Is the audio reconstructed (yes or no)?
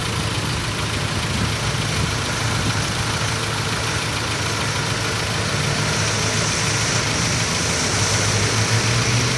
no